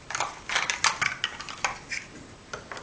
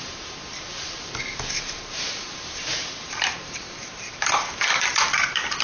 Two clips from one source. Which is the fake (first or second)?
second